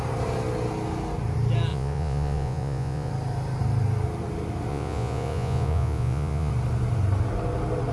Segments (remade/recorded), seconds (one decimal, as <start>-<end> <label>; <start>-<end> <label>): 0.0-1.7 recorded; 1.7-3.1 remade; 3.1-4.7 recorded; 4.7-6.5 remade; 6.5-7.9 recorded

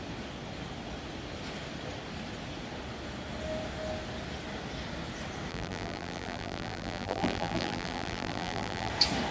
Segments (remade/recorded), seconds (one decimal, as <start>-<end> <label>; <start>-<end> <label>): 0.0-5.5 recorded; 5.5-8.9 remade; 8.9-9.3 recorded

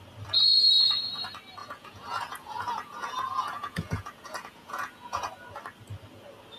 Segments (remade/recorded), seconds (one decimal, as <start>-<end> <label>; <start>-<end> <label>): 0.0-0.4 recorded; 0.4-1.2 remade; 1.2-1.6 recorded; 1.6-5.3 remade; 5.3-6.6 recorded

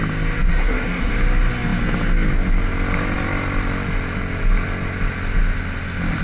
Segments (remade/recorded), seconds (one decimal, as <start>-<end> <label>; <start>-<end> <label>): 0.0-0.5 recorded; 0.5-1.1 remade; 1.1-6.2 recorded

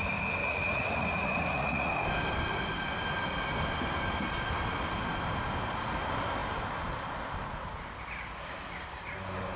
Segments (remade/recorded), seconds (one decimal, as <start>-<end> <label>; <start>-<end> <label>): 0.0-0.4 recorded; 0.4-1.9 remade; 1.9-9.6 recorded

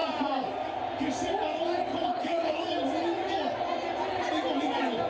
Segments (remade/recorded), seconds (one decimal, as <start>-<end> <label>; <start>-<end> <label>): 0.0-1.9 recorded; 1.9-2.6 remade; 2.6-5.1 recorded

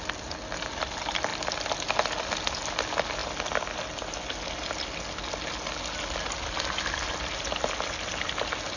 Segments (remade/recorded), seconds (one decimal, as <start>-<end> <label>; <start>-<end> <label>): 0.0-8.8 recorded